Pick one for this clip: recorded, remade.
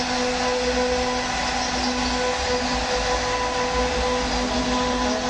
recorded